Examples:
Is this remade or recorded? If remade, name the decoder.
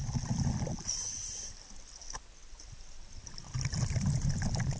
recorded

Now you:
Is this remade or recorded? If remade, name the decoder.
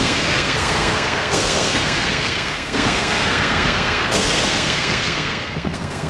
remade, codec, SNAC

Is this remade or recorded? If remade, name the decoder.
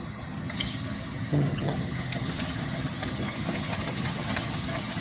remade, vocoder, HiFi-GAN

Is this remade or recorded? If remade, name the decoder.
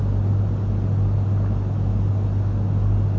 recorded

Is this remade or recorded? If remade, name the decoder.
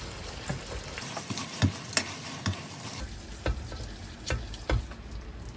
recorded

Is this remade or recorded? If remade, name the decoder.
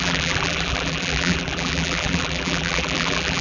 remade, vocoder, BigVGAN v2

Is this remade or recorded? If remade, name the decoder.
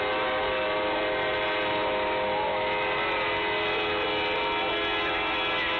recorded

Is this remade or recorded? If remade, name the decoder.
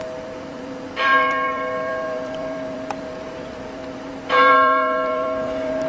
remade, vocoder, BigVGAN v2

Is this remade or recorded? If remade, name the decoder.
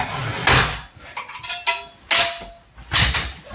recorded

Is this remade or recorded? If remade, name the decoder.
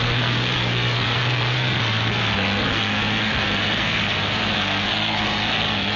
remade, codec, SNAC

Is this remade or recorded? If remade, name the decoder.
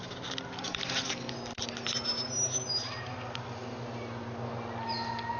recorded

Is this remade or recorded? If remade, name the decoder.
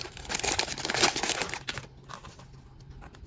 recorded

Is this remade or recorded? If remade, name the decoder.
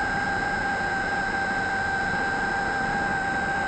recorded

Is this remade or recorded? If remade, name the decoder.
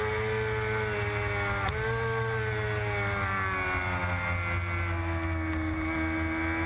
recorded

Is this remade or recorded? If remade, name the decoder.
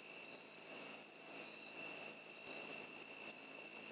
recorded